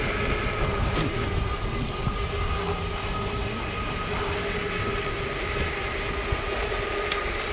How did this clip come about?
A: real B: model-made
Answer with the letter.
A